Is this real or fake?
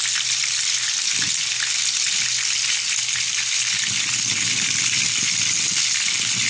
real